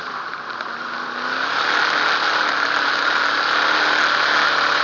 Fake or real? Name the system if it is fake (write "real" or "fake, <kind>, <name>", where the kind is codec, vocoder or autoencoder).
real